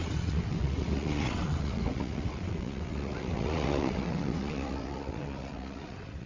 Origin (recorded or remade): remade